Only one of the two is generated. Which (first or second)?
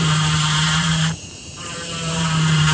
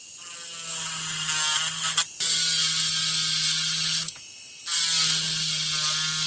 first